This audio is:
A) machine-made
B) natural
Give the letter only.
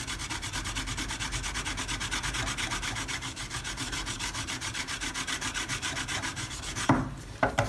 A